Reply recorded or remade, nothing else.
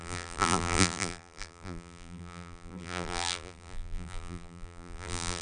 remade